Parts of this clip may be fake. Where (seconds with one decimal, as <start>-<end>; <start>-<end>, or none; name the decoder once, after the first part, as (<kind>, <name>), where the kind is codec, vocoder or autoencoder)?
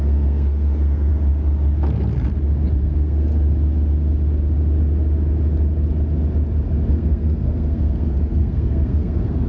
0.0-1.1 (codec, SNAC); 2.8-3.3; 6.9-9.5